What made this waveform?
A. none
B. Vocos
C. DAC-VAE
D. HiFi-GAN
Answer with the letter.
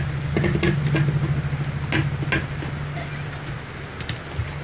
A